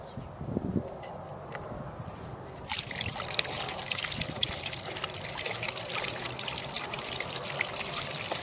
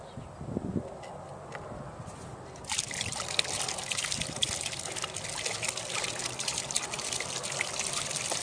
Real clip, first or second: second